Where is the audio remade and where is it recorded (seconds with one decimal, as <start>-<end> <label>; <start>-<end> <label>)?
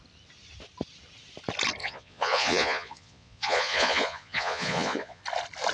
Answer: 0.0-1.8 recorded; 1.8-5.2 remade; 5.2-5.7 recorded